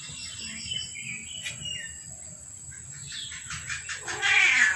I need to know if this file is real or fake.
real